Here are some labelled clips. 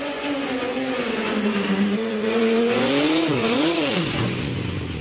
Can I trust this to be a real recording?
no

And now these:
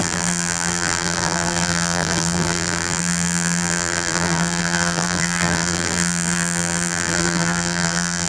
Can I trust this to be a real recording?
no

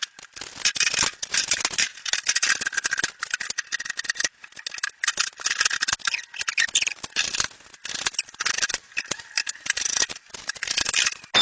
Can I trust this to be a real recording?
yes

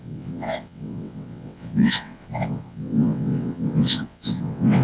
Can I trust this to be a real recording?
no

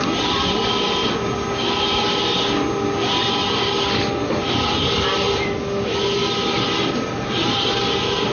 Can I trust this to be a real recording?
yes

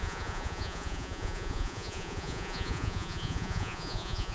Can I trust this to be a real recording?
no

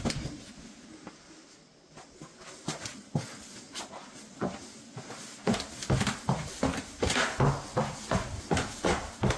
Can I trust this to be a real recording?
yes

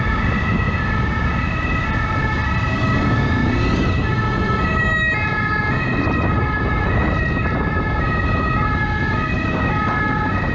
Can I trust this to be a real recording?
yes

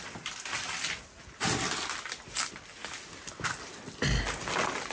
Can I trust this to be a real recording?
yes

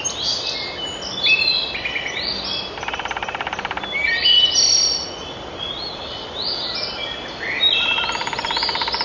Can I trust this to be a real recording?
yes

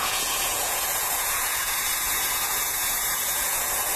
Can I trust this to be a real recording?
no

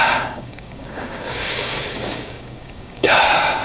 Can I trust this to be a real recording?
no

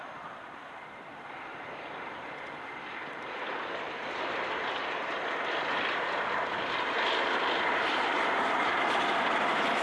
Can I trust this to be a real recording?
no